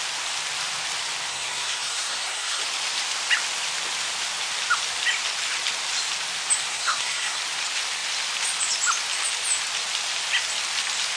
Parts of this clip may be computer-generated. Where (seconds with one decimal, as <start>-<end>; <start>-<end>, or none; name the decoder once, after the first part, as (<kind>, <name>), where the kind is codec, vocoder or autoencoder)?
1.3-2.6 (codec, SNAC); 6.7-7.4